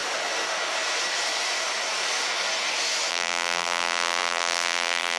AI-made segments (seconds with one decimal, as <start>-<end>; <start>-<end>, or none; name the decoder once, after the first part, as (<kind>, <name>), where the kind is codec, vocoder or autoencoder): 3.1-5.2 (vocoder, BigVGAN v2)